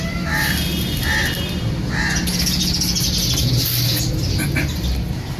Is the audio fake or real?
real